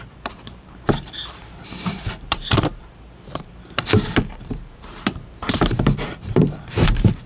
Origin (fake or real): fake